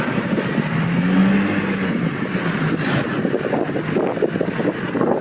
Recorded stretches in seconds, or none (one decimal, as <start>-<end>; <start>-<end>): 0.0-5.2